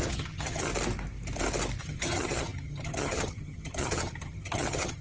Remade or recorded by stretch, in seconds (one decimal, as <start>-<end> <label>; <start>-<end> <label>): 0.0-0.7 remade; 0.7-1.8 recorded; 1.8-5.0 remade